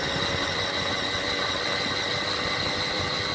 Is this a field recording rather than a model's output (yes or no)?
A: yes